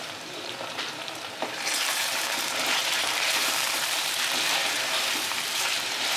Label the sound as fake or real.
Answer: fake